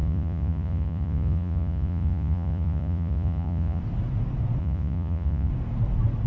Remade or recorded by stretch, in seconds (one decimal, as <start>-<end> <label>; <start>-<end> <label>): 0.0-3.8 remade; 3.8-4.6 recorded; 4.6-5.5 remade; 5.5-6.3 recorded